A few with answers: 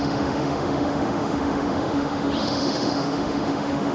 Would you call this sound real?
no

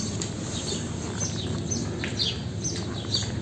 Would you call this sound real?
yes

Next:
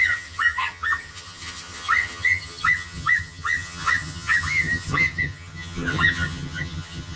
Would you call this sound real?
no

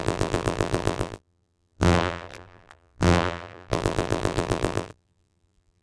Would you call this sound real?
no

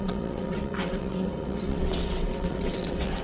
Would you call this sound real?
no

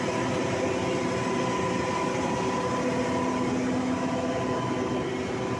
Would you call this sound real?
yes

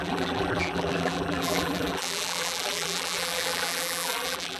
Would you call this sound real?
no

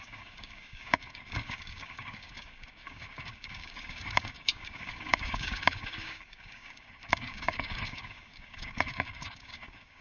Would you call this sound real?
no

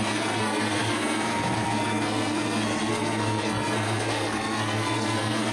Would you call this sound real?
no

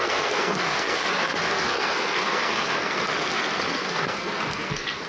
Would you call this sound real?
no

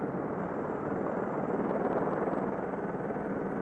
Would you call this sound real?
yes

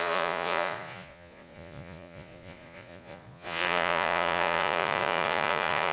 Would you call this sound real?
no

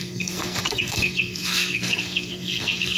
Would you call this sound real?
no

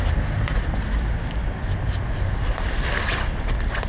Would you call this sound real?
yes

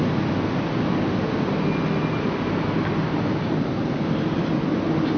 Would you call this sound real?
yes